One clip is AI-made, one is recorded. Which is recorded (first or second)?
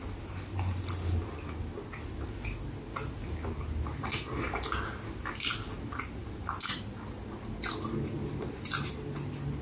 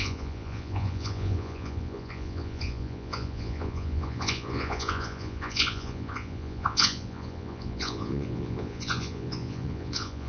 first